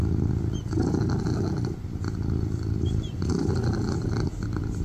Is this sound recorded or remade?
recorded